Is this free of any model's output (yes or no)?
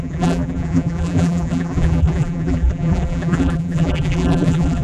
no